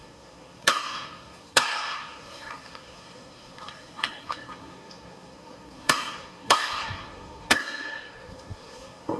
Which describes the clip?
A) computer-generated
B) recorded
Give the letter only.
A